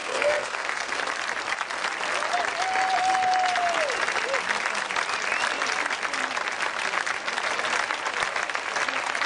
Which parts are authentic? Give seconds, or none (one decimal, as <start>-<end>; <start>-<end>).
1.0-9.3